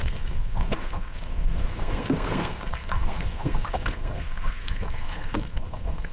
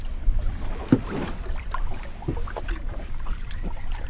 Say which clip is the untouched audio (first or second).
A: second